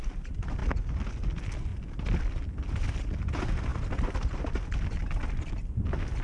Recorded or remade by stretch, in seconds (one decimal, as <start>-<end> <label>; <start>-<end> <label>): 0.0-6.2 recorded

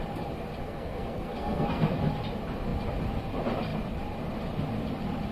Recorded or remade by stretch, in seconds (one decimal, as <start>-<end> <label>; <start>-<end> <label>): 0.0-0.6 recorded; 0.6-2.0 remade; 2.0-5.3 recorded